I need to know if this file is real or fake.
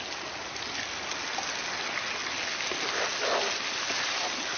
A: real